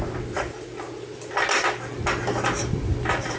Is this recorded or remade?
recorded